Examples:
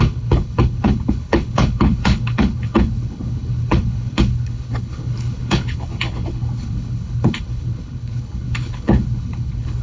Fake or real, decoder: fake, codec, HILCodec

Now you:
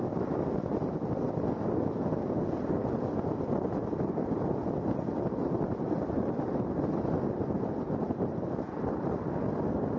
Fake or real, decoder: real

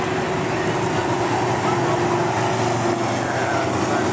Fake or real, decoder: real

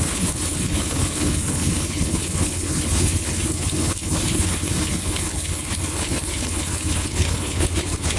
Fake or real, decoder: fake, codec, HILCodec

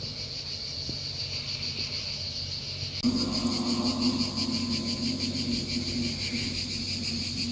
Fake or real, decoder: real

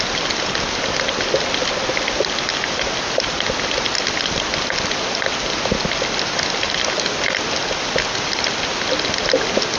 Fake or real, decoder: real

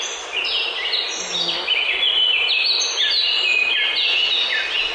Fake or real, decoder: real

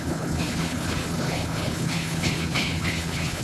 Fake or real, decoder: fake, codec, HILCodec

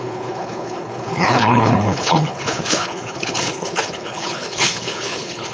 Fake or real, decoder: fake, codec, HILCodec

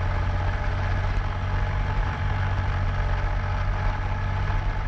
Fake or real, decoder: real